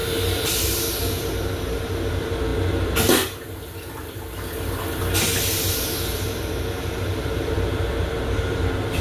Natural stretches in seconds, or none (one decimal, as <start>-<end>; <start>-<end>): none